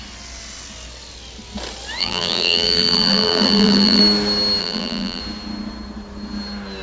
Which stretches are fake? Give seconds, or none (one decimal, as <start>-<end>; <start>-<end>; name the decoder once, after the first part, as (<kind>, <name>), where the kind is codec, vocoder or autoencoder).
2.0-4.0 (vocoder, BigVGAN v2); 4.6-5.2